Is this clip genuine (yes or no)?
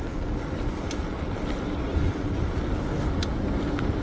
yes